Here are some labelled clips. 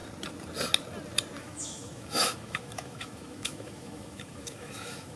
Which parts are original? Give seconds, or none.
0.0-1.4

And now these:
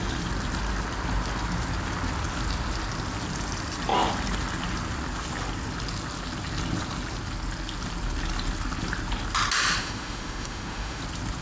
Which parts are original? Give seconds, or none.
0.0-9.8; 11.0-11.4